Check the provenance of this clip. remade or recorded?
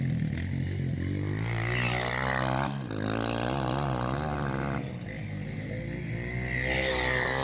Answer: recorded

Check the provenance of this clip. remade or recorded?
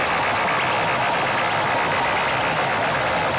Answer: recorded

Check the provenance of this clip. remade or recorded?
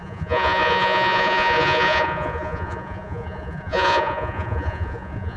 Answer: remade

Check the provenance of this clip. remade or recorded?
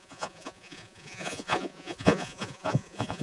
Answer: remade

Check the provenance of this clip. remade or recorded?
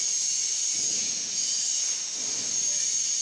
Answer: recorded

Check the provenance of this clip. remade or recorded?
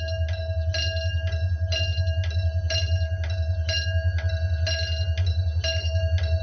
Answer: recorded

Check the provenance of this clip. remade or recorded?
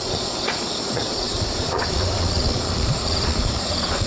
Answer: remade